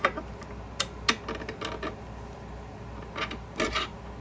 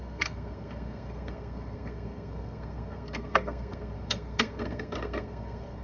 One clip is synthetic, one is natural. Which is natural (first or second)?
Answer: first